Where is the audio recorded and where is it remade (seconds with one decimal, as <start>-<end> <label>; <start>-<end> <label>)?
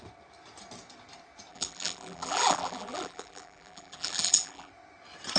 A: 0.0-1.5 recorded; 1.5-4.7 remade; 4.7-5.4 recorded